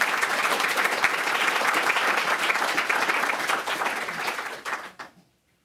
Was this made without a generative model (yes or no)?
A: yes